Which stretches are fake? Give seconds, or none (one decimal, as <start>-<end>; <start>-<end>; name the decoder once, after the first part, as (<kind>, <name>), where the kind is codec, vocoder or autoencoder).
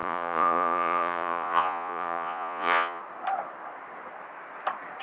0.0-3.0 (vocoder, Vocos)